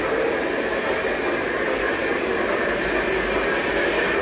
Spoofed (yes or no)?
no